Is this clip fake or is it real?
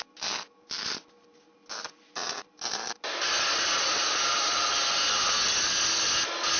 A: real